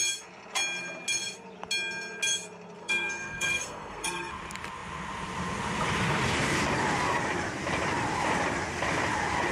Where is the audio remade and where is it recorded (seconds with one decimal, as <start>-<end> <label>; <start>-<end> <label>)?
0.0-2.8 recorded; 2.8-4.3 remade; 4.3-9.5 recorded